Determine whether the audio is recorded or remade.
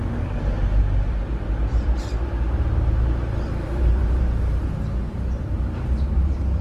remade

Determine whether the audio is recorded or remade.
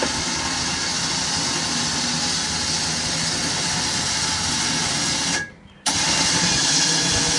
recorded